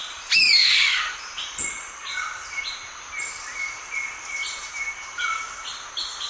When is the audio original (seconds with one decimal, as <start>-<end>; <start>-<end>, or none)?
3.8-4.4; 5.4-6.3